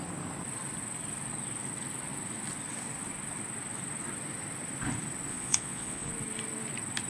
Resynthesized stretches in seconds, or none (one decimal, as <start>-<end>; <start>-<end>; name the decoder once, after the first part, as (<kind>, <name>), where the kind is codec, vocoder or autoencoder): 5.3-6.1 (vocoder, Vocos)